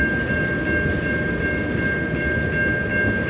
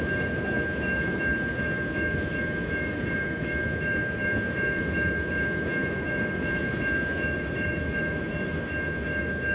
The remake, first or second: second